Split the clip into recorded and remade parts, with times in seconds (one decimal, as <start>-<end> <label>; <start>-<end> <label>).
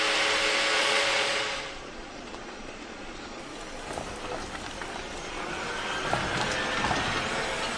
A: 0.0-0.7 recorded; 0.7-3.4 remade; 3.4-7.8 recorded